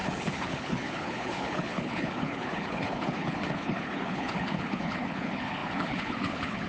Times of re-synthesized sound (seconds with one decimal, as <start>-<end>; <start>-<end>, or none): 0.0-6.7